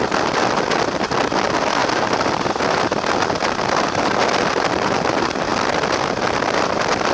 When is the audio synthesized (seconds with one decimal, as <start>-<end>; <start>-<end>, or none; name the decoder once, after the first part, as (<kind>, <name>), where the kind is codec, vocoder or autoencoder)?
none